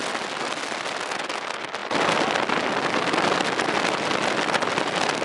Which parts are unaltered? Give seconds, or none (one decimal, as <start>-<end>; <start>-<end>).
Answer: 0.0-5.2